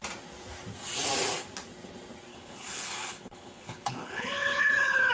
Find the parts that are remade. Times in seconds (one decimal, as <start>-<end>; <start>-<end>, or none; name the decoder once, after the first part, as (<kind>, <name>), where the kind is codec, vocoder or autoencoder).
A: 2.3-5.1 (codec, HILCodec)